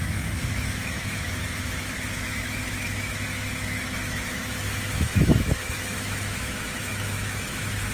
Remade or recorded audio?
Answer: remade